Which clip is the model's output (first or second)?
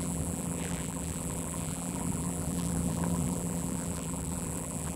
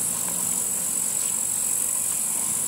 first